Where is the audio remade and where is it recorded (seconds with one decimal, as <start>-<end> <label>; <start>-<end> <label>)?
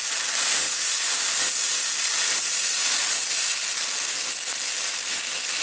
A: 0.0-5.6 recorded